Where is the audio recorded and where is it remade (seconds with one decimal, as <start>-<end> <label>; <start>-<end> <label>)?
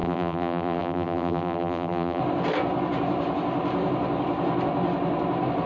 0.0-2.2 remade; 2.2-5.7 recorded